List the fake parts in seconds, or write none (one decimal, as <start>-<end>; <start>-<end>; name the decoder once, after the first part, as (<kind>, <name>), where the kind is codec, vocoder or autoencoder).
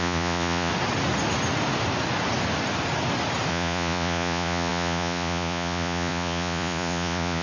0.0-0.7 (vocoder, Vocos); 3.5-7.4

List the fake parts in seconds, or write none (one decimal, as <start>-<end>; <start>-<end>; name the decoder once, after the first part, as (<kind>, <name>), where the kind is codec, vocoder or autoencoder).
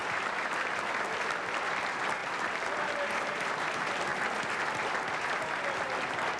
none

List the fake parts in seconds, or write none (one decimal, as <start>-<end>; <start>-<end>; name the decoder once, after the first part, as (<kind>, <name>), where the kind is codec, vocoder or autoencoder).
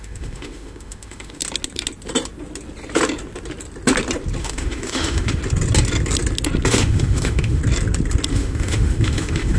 0.0-1.4 (autoencoder, DAC-VAE); 4.4-5.4; 6.7-7.6; 8.3-9.6